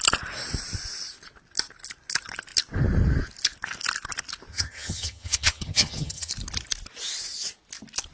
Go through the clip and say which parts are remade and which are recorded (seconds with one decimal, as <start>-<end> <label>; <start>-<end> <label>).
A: 0.0-4.5 recorded; 4.5-6.3 remade; 6.3-8.1 recorded